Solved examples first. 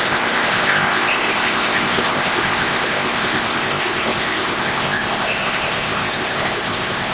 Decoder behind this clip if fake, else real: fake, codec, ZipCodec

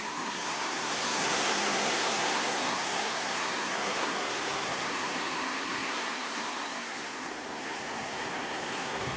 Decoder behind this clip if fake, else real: fake, codec, SNAC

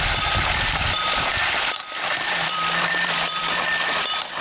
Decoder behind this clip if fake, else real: fake, vocoder, BigVGAN v2